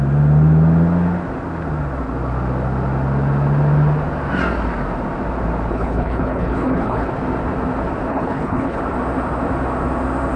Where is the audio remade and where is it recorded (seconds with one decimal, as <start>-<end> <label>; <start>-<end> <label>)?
0.0-5.7 recorded; 5.7-7.1 remade; 7.1-8.1 recorded; 8.1-8.8 remade; 8.8-10.4 recorded